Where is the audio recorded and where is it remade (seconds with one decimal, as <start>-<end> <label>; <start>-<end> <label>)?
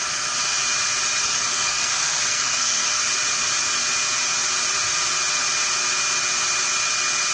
0.0-1.2 recorded; 1.2-3.0 remade; 3.0-7.3 recorded